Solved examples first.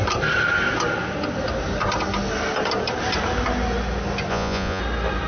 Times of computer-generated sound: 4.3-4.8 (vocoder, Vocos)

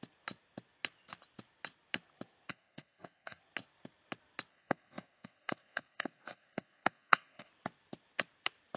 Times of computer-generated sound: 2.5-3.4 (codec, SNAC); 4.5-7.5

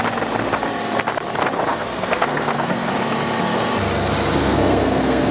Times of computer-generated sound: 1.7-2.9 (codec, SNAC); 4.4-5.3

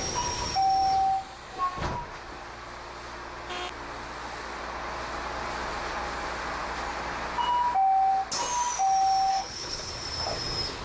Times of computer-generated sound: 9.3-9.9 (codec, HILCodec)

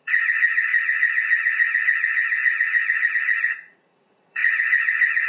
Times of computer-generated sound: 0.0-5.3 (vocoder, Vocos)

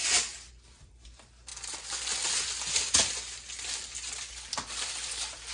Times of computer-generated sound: none